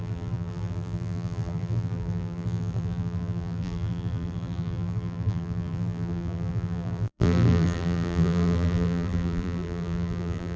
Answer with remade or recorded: remade